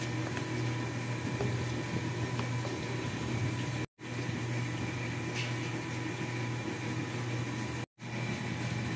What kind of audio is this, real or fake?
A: real